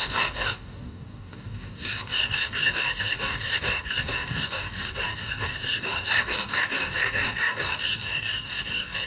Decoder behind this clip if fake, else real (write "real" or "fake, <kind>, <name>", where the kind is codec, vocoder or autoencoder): fake, codec, DAC